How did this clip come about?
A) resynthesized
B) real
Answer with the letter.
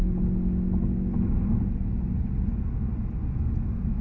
B